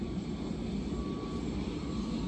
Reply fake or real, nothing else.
real